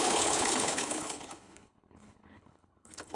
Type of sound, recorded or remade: remade